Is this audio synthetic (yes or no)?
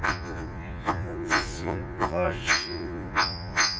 yes